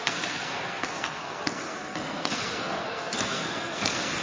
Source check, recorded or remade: remade